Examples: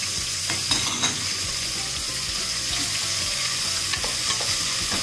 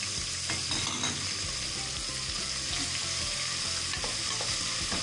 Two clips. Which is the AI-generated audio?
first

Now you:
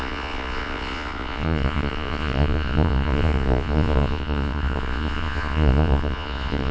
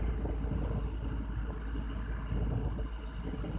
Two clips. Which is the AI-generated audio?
first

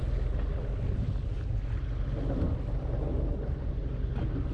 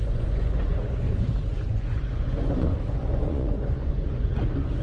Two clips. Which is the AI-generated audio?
second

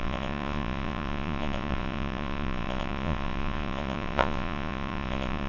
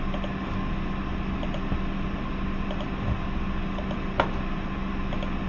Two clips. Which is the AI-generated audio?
first